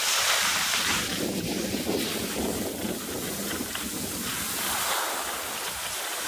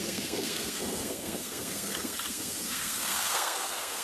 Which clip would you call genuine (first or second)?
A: first